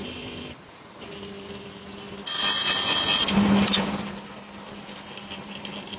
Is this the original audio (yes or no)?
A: yes